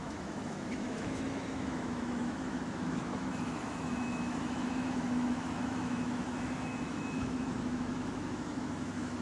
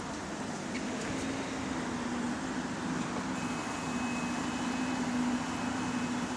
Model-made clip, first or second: first